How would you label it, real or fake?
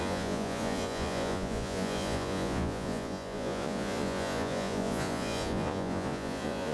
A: fake